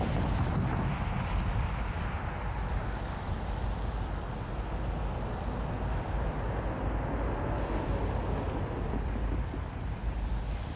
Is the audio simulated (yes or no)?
no